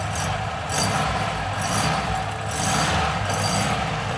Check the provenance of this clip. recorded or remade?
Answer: recorded